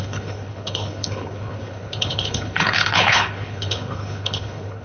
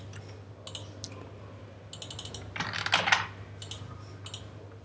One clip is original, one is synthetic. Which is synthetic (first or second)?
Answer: first